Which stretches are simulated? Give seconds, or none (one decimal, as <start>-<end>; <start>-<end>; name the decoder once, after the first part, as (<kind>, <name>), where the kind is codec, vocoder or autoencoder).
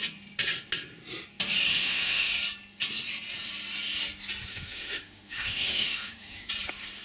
1.7-2.3 (autoencoder, DAC-VAE); 4.5-6.5